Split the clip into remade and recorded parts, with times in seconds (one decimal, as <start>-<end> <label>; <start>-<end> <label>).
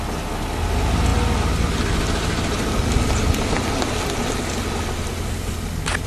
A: 0.0-6.1 recorded